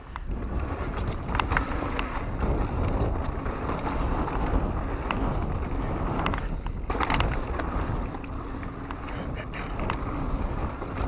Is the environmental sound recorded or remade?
recorded